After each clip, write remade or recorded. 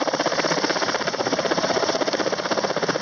recorded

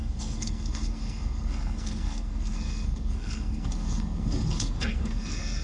remade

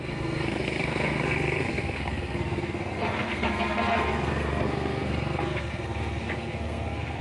remade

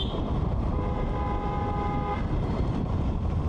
recorded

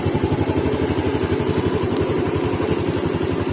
recorded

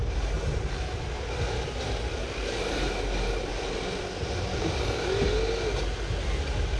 recorded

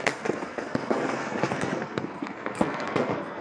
remade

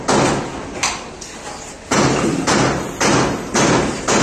recorded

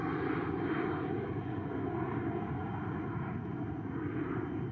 recorded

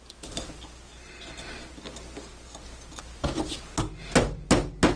recorded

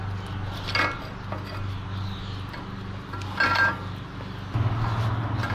recorded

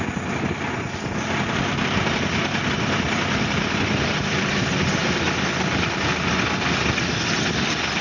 recorded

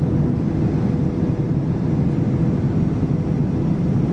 recorded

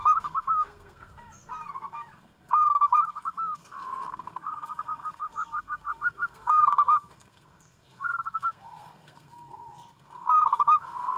remade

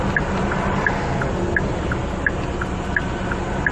recorded